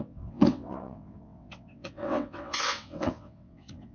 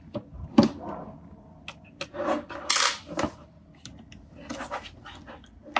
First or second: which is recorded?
second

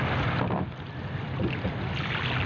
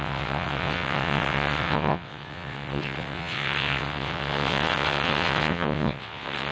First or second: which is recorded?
first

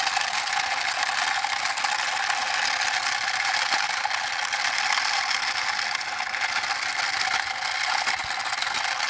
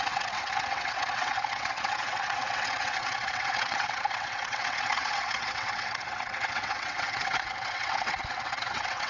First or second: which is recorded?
first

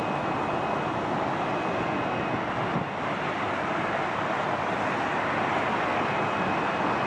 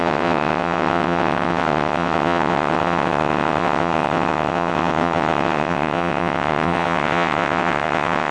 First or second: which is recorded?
first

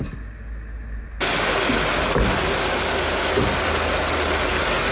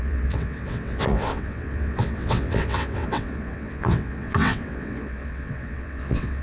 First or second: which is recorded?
first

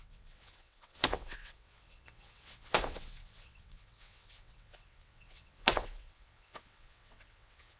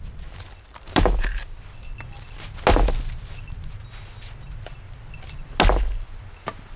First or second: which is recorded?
second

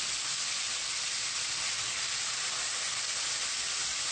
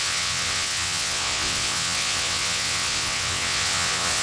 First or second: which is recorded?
first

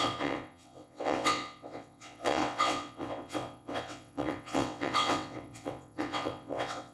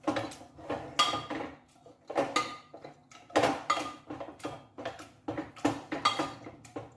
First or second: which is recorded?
second